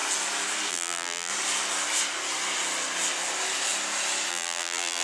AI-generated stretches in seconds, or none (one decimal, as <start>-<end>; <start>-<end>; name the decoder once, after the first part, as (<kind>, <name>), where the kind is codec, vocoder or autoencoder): 0.7-1.3 (vocoder, BigVGAN v2); 4.3-5.0